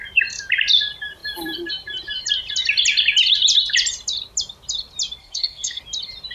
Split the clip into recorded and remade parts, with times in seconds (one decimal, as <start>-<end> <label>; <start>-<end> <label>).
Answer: 0.0-5.2 recorded; 5.2-5.8 remade; 5.8-6.3 recorded